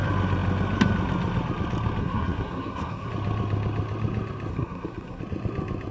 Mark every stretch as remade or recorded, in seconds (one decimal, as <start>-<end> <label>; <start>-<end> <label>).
0.0-2.0 recorded; 2.0-3.1 remade; 3.1-4.5 recorded; 4.5-5.2 remade; 5.2-5.9 recorded